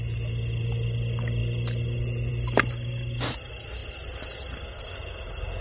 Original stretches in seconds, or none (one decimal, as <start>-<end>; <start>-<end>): 0.0-5.6